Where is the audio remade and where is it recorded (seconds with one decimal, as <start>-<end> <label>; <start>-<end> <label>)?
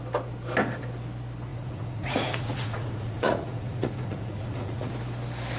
0.0-1.5 recorded; 1.5-4.9 remade; 4.9-5.6 recorded